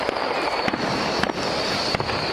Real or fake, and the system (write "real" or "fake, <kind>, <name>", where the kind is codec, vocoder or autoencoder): real